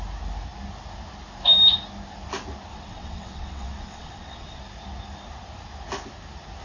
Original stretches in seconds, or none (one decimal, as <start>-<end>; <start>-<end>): 0.0-2.7; 4.6-6.6